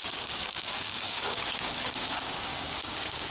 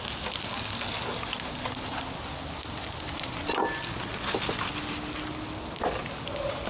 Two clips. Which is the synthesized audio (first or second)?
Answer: first